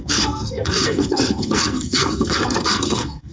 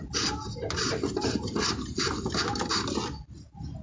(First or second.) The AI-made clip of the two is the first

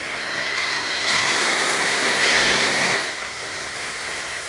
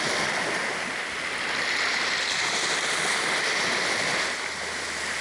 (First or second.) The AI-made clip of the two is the first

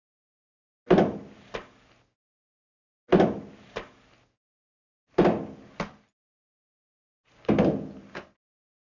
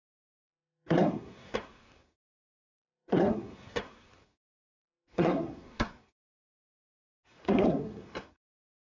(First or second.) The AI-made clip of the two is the second